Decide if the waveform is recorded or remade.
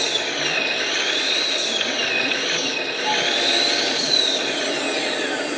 recorded